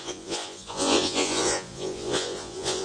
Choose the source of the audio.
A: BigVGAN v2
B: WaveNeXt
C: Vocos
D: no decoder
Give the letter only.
C